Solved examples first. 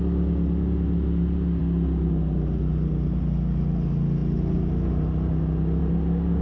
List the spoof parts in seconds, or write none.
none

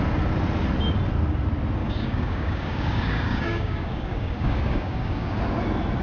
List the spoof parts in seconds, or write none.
1.8-5.4

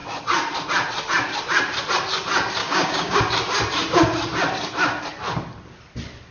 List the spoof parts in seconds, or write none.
2.6-3.2